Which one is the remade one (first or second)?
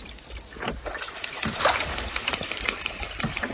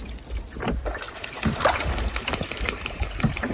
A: first